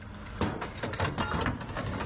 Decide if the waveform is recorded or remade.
recorded